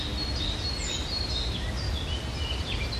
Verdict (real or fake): real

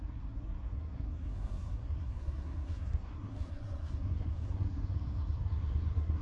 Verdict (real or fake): fake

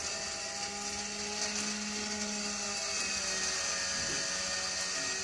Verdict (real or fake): real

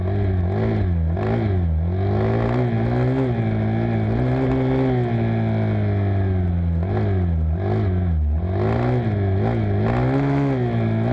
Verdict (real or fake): real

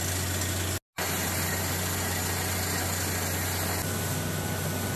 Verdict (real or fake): real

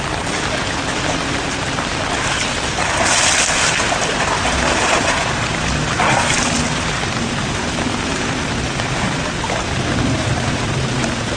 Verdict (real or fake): real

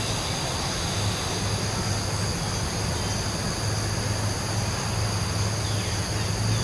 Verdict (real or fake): real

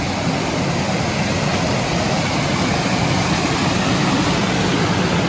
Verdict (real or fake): real